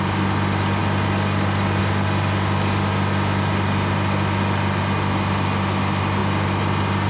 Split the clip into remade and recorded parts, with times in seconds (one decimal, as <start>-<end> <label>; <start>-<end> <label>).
0.0-7.1 recorded